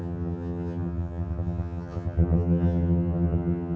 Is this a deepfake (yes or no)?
yes